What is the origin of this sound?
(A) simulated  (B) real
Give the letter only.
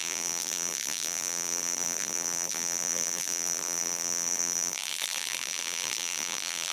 A